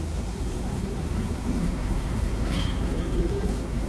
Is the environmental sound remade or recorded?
remade